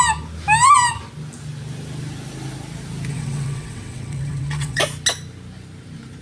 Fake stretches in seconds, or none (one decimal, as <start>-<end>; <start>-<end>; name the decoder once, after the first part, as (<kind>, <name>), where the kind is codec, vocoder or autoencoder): 3.1-4.8 (vocoder, WaveNeXt)